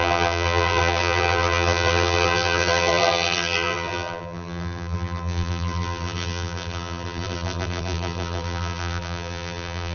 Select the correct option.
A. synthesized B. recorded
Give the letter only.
A